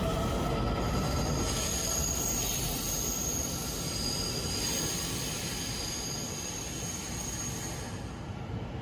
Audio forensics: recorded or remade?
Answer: recorded